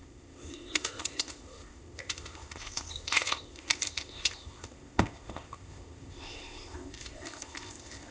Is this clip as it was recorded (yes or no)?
no